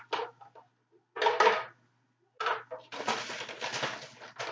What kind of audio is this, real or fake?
real